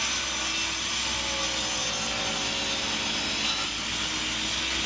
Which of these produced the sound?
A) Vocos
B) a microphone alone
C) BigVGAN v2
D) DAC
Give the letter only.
B